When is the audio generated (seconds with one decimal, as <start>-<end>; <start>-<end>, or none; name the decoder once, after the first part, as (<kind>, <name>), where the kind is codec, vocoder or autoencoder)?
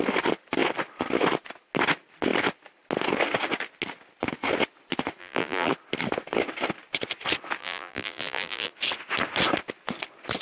5.2-5.7 (vocoder, BigVGAN v2); 7.6-8.7